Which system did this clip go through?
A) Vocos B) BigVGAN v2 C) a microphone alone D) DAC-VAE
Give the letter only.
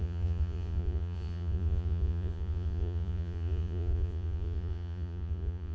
A